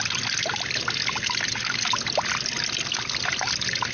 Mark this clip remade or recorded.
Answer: recorded